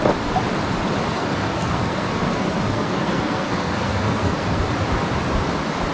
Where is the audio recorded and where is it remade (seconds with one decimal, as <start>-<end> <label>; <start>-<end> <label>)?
0.0-1.1 recorded; 1.1-4.6 remade; 4.6-5.9 recorded